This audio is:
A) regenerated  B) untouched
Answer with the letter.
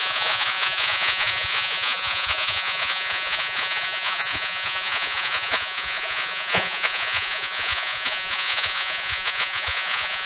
A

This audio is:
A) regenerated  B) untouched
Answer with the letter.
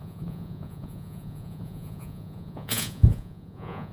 A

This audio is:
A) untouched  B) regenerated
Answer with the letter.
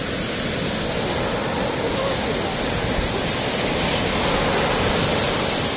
A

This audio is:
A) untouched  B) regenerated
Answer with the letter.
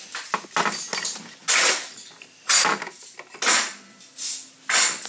A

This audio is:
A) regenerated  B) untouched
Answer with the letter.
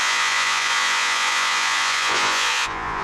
A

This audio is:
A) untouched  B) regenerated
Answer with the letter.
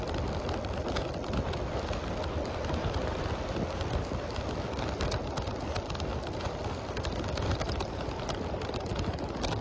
A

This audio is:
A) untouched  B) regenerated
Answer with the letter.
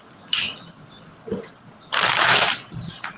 A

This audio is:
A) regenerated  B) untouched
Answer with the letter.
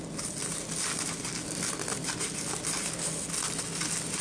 B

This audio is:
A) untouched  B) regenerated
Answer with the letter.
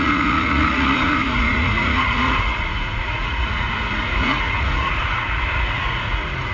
B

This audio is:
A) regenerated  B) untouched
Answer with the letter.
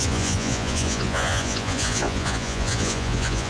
A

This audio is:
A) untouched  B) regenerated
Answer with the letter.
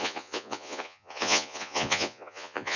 B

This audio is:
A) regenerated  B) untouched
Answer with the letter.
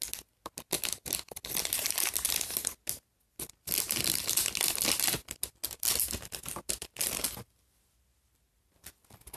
B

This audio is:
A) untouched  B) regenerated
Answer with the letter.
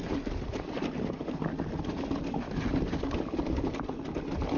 A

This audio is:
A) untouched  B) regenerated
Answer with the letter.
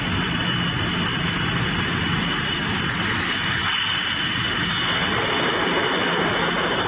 A